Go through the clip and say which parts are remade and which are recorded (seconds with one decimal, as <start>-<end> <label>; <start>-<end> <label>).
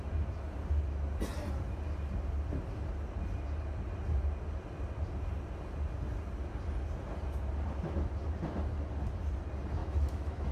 0.0-9.8 recorded; 9.8-10.5 remade